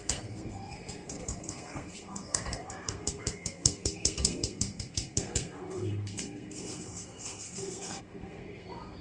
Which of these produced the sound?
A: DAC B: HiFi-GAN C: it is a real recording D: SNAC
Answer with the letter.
D